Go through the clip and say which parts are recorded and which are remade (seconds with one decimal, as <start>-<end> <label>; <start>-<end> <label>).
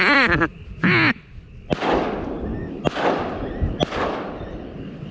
0.0-5.1 recorded